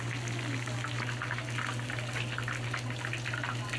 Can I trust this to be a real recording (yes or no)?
yes